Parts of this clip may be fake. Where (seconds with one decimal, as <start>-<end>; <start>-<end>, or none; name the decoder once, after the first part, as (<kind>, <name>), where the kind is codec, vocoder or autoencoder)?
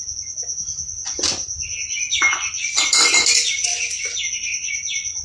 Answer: none